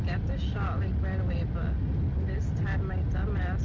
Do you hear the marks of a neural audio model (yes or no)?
no